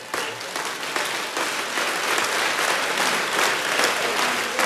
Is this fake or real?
real